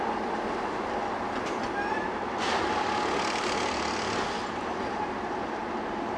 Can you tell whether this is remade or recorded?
recorded